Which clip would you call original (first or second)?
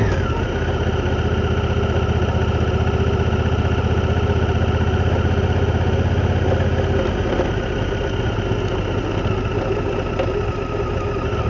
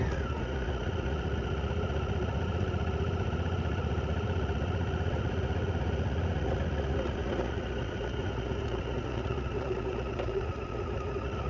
first